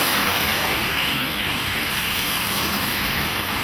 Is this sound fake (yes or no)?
yes